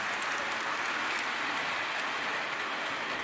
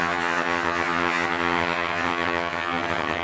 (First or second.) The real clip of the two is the first